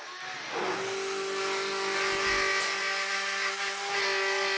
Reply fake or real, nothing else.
real